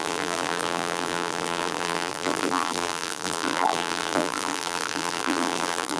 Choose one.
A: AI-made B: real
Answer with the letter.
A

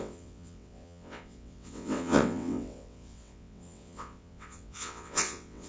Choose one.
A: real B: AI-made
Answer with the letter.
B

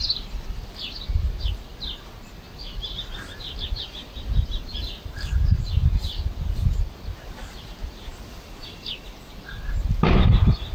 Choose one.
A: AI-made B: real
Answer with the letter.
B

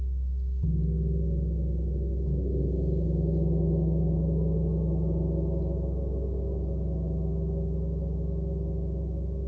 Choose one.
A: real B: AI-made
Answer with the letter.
A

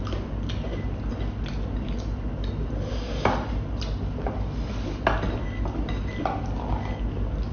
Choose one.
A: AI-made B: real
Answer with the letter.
B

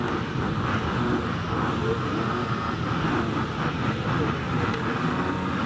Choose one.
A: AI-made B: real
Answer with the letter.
B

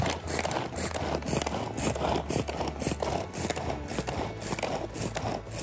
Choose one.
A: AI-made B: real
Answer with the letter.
B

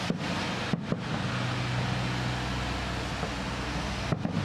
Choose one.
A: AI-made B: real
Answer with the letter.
B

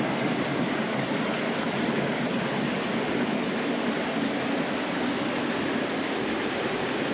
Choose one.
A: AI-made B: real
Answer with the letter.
B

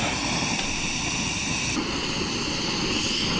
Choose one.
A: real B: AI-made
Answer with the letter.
A